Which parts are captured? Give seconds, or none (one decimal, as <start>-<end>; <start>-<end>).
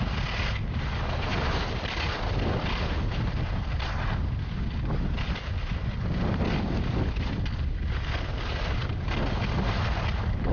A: 0.0-10.5